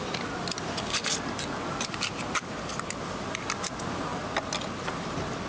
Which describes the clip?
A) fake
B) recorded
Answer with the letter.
B